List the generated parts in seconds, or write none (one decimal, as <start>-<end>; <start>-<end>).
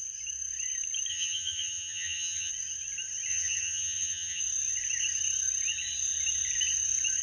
1.1-2.5; 3.3-4.4